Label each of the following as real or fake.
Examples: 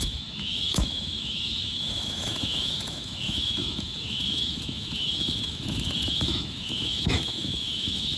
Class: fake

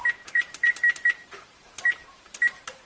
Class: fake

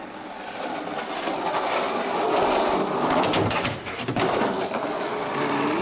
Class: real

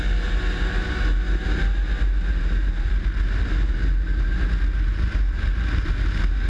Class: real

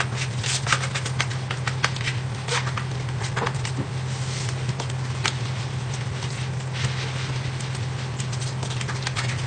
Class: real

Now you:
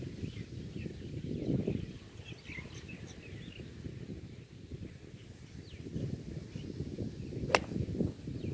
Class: real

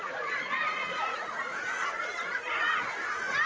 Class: fake